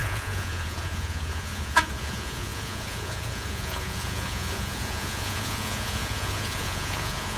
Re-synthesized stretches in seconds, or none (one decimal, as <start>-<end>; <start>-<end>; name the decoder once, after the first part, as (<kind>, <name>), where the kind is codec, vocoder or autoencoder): 0.0-7.4 (vocoder, Vocos)

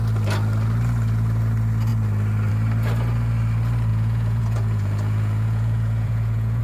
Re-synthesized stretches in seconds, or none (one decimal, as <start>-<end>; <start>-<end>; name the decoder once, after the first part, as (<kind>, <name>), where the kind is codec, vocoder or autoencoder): 3.9-6.6 (vocoder, Vocos)

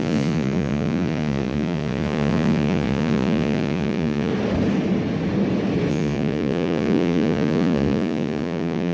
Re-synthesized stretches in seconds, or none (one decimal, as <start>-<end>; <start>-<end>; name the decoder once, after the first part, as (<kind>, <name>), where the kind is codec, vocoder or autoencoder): 0.0-4.3 (vocoder, Vocos); 5.9-8.9

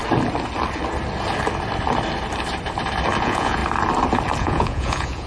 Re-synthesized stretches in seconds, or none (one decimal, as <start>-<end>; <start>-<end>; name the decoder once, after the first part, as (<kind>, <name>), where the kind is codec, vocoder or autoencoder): 3.2-3.6 (vocoder, Vocos); 4.4-5.3

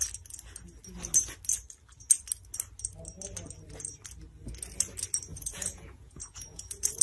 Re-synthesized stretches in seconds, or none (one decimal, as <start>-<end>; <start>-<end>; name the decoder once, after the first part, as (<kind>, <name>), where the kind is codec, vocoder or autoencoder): 5.3-7.0 (vocoder, Vocos)